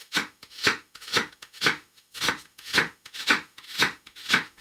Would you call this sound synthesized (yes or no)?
yes